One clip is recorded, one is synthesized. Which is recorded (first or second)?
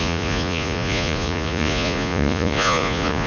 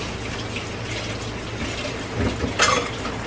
second